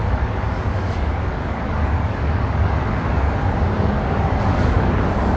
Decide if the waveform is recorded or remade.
remade